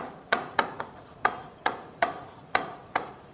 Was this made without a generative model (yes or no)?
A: no